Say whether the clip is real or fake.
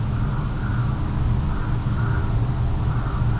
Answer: real